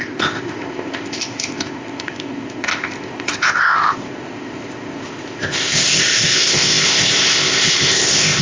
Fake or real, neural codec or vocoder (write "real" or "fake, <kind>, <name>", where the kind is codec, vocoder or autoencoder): fake, codec, ZipCodec